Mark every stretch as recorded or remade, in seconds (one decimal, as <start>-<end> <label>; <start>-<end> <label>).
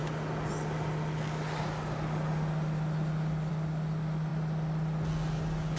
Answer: 0.0-5.8 recorded